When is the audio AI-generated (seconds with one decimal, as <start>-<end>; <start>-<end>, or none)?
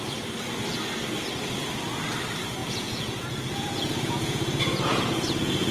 2.6-5.7